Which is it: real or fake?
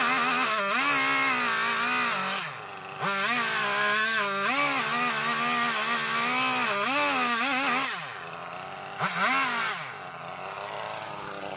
real